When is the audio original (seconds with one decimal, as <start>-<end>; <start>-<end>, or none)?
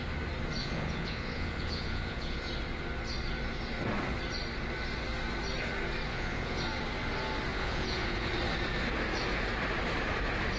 0.0-0.6; 2.5-6.1; 6.6-7.5; 8.3-10.6